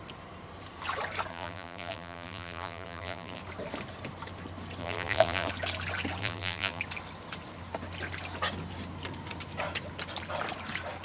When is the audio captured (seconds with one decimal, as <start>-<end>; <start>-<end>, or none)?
0.0-1.3; 3.4-4.8; 5.5-6.2; 6.8-11.0